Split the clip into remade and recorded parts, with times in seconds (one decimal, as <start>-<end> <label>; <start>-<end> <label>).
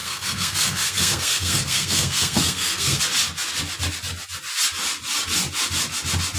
0.0-3.0 remade; 3.0-6.4 recorded